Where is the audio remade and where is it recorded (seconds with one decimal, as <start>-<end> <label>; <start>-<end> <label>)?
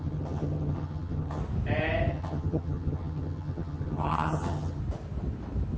0.0-1.4 remade; 1.4-2.1 recorded; 2.1-4.8 remade; 4.8-5.8 recorded